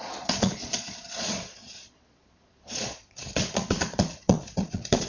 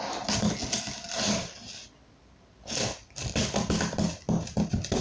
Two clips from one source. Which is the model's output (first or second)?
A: first